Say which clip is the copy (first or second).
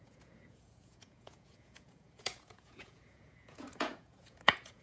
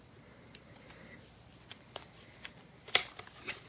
first